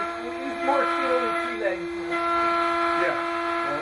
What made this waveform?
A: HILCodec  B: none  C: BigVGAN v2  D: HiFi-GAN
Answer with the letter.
B